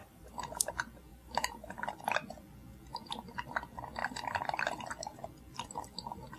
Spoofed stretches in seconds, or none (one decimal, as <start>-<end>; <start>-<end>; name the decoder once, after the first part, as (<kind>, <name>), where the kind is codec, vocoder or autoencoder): 0.0-0.7 (vocoder, BigVGAN v2); 1.1-1.9; 4.0-4.8

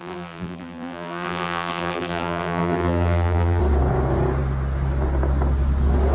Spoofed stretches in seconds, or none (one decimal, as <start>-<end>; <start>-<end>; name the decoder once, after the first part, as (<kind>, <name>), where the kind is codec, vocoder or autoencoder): 0.0-3.6 (vocoder, BigVGAN v2)